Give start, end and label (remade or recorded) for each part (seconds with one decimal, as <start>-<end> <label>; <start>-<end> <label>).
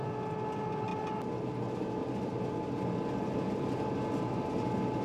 0.0-5.0 recorded